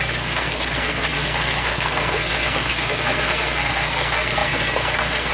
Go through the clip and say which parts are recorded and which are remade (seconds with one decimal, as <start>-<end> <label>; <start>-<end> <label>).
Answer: 0.0-5.3 remade